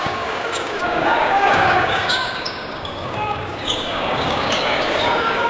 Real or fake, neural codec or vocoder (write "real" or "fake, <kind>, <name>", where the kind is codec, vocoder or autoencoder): fake, codec, DAC